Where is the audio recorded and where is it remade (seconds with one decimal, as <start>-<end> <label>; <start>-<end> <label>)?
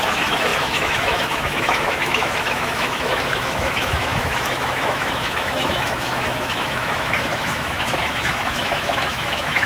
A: 0.0-9.7 remade